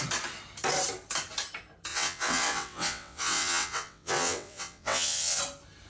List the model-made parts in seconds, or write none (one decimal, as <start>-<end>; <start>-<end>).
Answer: 1.9-5.4